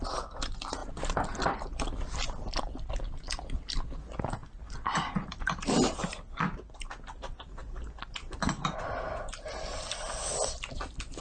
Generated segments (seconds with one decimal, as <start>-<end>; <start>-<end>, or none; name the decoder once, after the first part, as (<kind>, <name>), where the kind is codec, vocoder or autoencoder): none